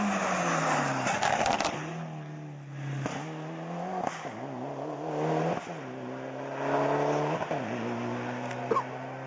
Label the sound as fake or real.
real